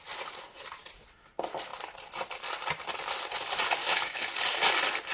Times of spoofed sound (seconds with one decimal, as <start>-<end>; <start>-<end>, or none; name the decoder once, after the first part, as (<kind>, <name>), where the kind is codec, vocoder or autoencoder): 3.8-4.3 (autoencoder, DAC-VAE)